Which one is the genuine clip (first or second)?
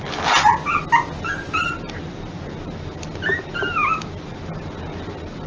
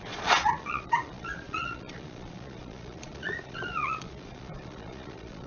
first